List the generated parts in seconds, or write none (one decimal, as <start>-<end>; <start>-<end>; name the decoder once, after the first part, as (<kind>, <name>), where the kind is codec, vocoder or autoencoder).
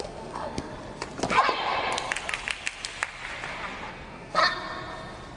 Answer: 0.0-0.7 (codec, SNAC); 3.9-4.4